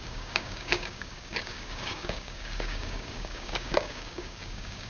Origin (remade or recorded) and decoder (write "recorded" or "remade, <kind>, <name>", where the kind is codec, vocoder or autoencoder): remade, codec, DAC